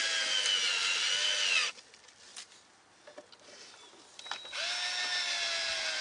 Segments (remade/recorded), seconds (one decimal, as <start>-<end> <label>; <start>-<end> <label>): 0.0-6.0 recorded